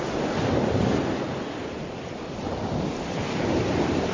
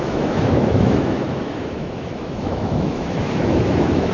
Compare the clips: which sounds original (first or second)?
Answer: first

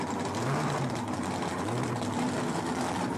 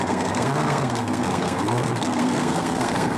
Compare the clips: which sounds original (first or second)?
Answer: first